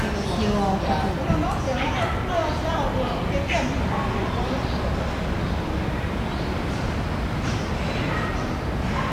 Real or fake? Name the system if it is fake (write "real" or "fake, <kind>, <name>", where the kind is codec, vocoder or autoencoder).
real